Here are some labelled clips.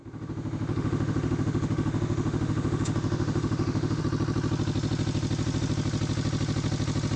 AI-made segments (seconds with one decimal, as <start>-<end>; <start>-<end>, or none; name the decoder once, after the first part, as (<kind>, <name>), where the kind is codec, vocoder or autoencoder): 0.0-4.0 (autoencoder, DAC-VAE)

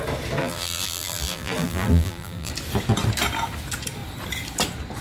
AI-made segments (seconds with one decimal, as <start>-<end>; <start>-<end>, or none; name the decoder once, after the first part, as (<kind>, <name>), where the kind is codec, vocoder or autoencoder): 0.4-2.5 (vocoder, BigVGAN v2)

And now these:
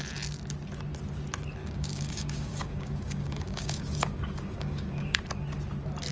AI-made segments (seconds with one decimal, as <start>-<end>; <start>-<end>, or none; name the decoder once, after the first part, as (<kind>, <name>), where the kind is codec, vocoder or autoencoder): 1.6-5.2 (codec, DAC)

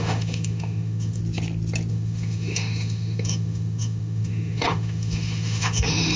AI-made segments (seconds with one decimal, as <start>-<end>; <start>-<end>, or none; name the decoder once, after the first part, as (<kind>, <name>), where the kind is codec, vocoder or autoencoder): 0.0-1.2 (autoencoder, DAC-VAE); 1.9-6.2

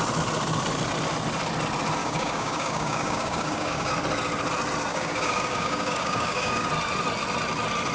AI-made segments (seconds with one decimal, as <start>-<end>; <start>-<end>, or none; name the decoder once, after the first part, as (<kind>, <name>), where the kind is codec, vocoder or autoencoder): 2.0-3.9 (codec, DAC); 4.9-6.7